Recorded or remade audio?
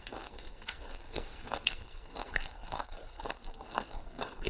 remade